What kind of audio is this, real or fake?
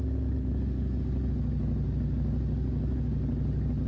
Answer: real